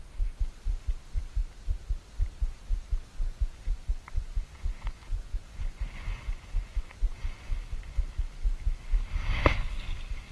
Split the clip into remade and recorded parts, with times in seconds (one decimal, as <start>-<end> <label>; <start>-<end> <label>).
0.0-3.1 recorded; 3.1-8.0 remade; 8.0-10.3 recorded